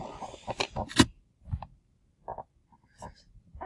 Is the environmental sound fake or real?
real